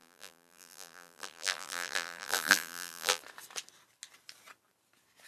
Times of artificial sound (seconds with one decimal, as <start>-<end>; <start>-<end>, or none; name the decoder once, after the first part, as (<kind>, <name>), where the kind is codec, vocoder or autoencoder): 0.0-3.2 (vocoder, BigVGAN v2)